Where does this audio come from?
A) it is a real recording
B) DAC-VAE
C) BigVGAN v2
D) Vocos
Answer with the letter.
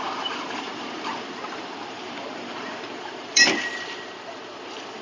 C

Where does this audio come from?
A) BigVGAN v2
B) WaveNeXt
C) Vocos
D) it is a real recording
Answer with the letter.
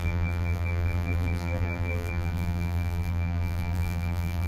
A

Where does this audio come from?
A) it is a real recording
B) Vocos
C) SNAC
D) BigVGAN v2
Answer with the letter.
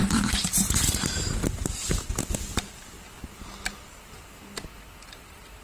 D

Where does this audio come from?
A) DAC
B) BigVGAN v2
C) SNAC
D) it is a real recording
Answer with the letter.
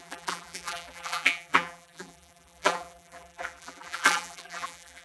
B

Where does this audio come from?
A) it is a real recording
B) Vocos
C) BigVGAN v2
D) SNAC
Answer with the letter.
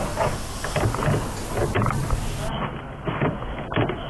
A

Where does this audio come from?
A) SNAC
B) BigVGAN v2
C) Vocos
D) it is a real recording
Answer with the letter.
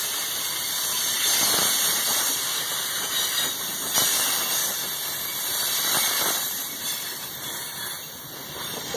B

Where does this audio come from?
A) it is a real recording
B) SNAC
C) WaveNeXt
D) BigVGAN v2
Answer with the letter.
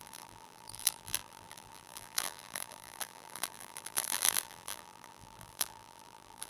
D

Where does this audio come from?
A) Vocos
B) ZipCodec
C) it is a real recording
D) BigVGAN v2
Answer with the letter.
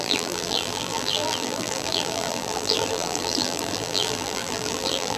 D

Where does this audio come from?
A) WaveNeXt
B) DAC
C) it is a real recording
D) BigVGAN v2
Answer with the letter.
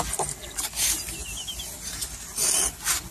C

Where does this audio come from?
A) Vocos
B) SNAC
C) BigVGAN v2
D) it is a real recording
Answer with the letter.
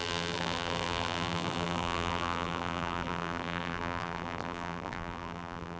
C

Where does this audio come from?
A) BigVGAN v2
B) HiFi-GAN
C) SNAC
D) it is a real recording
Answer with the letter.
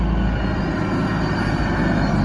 D